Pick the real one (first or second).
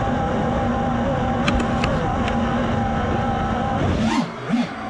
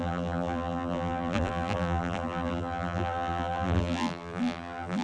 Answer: first